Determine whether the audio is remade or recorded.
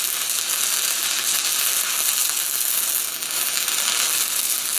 recorded